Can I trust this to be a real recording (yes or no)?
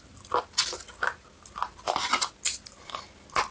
yes